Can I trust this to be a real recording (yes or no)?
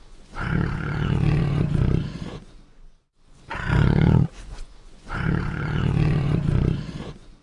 no